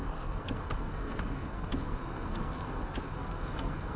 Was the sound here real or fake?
fake